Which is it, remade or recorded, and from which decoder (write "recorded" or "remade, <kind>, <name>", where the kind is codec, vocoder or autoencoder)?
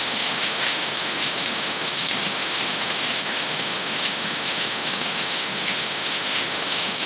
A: remade, autoencoder, DAC-VAE